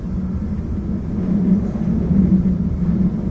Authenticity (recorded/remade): recorded